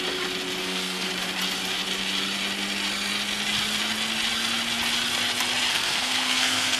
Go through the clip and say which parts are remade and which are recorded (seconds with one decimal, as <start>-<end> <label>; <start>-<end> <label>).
0.0-0.6 recorded; 0.6-1.1 remade; 1.1-5.7 recorded; 5.7-6.8 remade